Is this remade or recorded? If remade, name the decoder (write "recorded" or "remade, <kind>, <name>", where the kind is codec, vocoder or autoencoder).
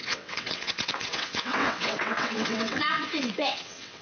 remade, vocoder, WaveNeXt